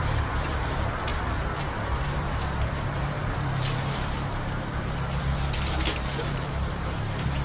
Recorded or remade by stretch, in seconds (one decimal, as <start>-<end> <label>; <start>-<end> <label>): 0.0-7.4 remade